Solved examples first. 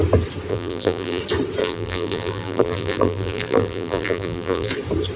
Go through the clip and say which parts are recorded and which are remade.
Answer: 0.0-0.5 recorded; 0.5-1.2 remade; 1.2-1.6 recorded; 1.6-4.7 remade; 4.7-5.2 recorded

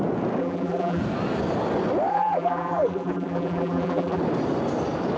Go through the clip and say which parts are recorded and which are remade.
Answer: 0.0-0.4 recorded; 0.4-1.0 remade; 1.0-2.1 recorded; 2.1-4.2 remade; 4.2-5.2 recorded

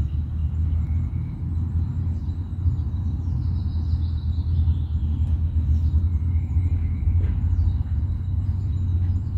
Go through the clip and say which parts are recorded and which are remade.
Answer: 0.0-9.4 recorded

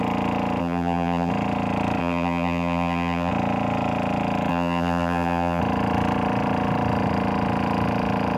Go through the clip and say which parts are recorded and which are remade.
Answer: 0.0-0.6 recorded; 0.6-1.3 remade; 1.3-2.0 recorded; 2.0-3.3 remade; 3.3-4.5 recorded; 4.5-5.6 remade; 5.6-8.4 recorded

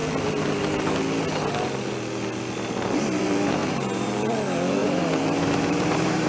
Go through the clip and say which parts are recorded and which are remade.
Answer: 0.0-3.6 recorded; 3.6-4.2 remade; 4.2-4.8 recorded; 4.8-6.3 remade

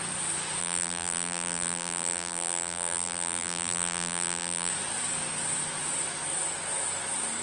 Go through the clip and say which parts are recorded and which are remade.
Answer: 0.0-0.6 recorded; 0.6-4.7 remade; 4.7-7.4 recorded

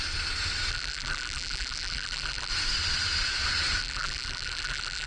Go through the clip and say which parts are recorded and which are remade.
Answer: 0.0-0.7 recorded; 0.7-2.5 remade; 2.5-3.8 recorded; 3.8-5.1 remade

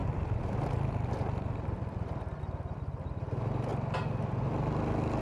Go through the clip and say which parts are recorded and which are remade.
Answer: 0.0-3.1 recorded; 3.1-3.7 remade; 3.7-5.2 recorded